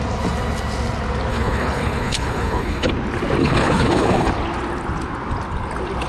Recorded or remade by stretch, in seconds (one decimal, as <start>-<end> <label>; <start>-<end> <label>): 0.0-1.3 recorded; 1.3-2.9 remade; 2.9-3.4 recorded; 3.4-4.3 remade; 4.3-6.1 recorded